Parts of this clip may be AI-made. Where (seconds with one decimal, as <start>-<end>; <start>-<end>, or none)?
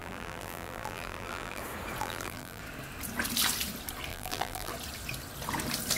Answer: 0.0-1.6; 2.0-2.6; 4.1-4.7